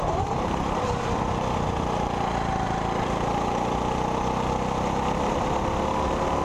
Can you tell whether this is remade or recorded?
recorded